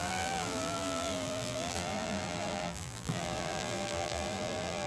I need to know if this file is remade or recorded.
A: remade